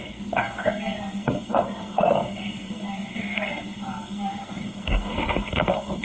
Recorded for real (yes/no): no